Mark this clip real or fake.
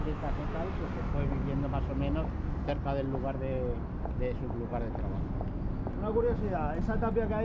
real